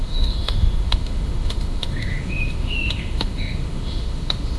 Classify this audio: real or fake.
fake